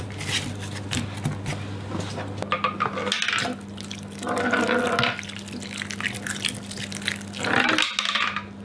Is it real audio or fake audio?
real